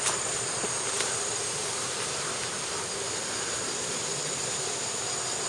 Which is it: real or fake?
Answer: real